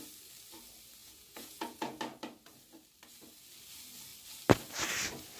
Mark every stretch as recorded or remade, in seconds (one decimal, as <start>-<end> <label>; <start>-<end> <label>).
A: 0.0-1.0 recorded; 1.0-2.0 remade; 2.0-5.4 recorded